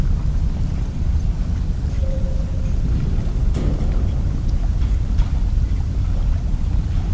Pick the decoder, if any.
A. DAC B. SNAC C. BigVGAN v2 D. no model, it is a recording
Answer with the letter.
D